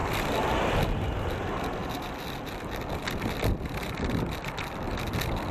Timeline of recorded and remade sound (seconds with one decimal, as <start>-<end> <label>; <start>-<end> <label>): 0.0-5.5 recorded